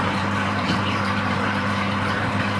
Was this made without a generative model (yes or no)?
no